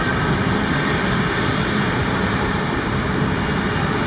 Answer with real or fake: fake